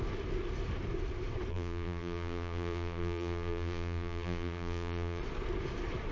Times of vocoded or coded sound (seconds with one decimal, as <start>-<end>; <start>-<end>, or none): 1.5-5.2